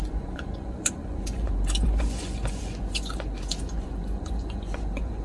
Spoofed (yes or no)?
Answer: yes